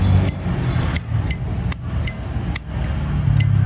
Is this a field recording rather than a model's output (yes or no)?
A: yes